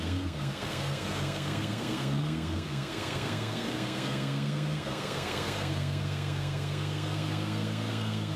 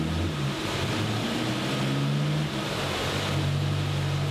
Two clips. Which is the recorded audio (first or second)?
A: second